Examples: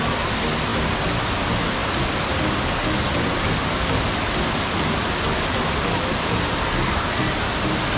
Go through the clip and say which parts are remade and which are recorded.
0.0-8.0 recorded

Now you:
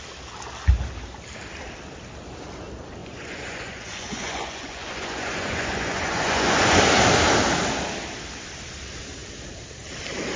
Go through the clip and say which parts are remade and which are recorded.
0.0-3.0 recorded; 3.0-6.8 remade; 6.8-10.4 recorded

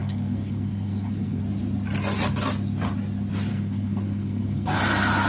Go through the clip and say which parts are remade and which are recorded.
0.0-1.4 remade; 1.4-3.5 recorded; 3.5-4.8 remade; 4.8-5.3 recorded

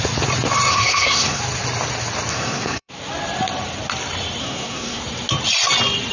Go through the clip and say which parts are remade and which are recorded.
0.0-0.7 recorded; 0.7-1.4 remade; 1.4-2.3 recorded; 2.3-2.9 remade; 2.9-4.4 recorded; 4.4-5.0 remade; 5.0-6.1 recorded

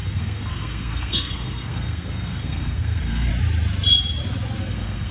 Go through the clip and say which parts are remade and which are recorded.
0.0-3.3 remade; 3.3-4.6 recorded; 4.6-5.1 remade

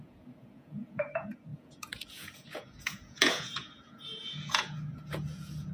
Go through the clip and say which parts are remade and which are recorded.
0.0-5.7 remade

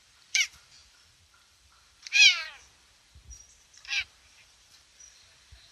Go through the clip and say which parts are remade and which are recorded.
0.0-5.7 remade

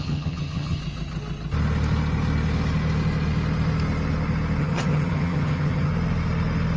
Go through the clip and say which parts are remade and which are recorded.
0.0-0.8 remade; 0.8-4.6 recorded; 4.6-5.9 remade; 5.9-6.8 recorded